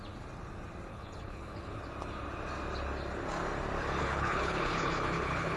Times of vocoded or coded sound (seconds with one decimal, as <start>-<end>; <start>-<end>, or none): 0.9-1.8; 4.0-5.6

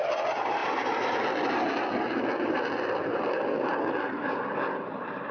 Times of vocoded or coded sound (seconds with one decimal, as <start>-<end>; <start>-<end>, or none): none

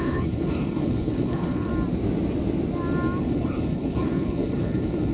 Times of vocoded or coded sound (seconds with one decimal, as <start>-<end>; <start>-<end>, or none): 0.0-1.7; 3.2-5.1

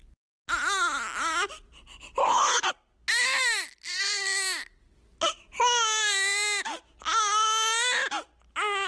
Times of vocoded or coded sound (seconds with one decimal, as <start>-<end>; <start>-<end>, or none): 2.2-2.7

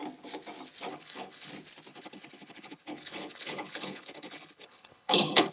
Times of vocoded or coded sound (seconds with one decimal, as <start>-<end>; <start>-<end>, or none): 0.9-1.5; 1.9-5.5

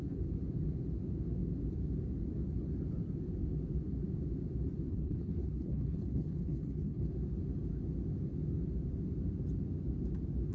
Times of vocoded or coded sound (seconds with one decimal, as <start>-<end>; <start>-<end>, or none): 4.9-7.1

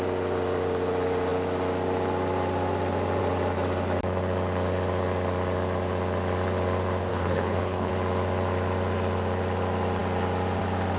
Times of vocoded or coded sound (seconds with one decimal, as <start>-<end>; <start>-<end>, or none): 7.1-7.9